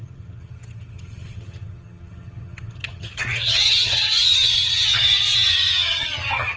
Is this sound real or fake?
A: fake